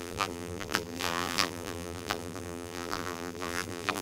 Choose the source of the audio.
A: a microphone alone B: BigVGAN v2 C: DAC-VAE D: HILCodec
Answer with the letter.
B